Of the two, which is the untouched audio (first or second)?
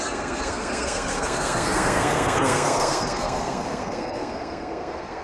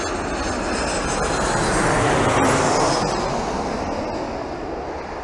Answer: second